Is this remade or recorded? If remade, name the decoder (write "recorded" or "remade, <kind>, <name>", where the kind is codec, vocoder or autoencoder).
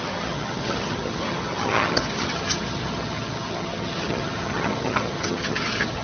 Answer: remade, vocoder, HiFi-GAN